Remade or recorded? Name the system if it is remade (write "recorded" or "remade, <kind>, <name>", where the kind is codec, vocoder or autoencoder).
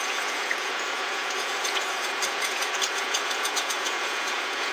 remade, vocoder, Vocos